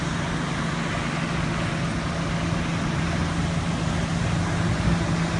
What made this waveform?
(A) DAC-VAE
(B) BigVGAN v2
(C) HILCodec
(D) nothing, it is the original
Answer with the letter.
D